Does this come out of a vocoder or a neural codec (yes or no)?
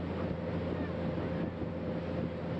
no